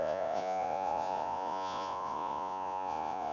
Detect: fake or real fake